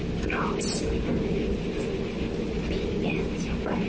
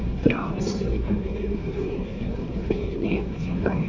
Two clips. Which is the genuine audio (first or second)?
first